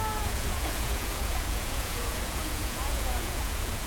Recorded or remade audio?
remade